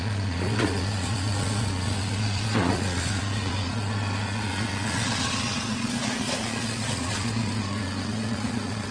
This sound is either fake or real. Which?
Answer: fake